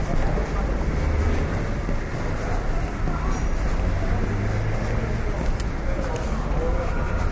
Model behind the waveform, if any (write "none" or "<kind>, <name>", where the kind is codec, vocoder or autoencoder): none